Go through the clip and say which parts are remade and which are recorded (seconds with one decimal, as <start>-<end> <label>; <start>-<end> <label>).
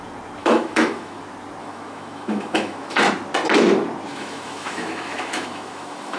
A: 0.0-0.4 recorded; 0.4-1.2 remade; 1.2-1.6 recorded; 1.6-3.0 remade; 3.0-4.1 recorded; 4.1-6.2 remade